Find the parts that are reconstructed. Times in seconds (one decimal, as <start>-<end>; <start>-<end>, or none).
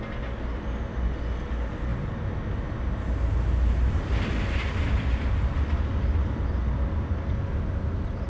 none